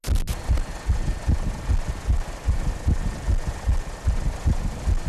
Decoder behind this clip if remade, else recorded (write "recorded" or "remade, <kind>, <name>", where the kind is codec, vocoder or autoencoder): recorded